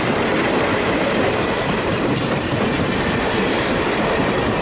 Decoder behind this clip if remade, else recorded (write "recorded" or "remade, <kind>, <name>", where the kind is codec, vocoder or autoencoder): remade, vocoder, BigVGAN v2